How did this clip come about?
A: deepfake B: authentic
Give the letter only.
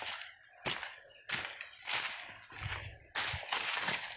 B